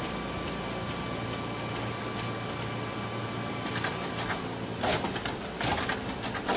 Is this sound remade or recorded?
recorded